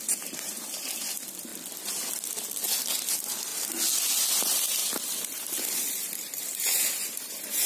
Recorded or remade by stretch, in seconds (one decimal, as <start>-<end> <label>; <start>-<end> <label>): 0.0-1.5 remade; 1.5-3.1 recorded; 3.1-3.5 remade; 3.5-4.3 recorded; 4.3-7.7 remade